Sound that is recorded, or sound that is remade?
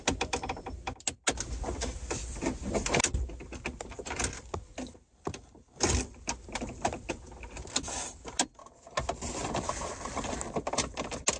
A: recorded